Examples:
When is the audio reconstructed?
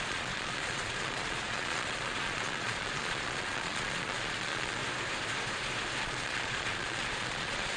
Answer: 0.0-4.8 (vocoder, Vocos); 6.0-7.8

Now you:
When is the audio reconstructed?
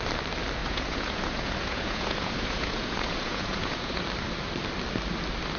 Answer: 0.6-4.0 (vocoder, Vocos)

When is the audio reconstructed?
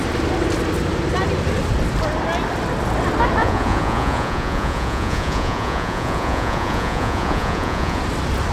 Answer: 3.4-8.0 (vocoder, Vocos)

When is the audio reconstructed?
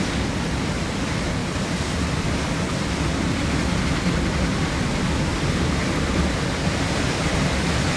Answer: none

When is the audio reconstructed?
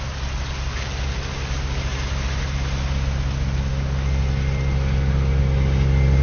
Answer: none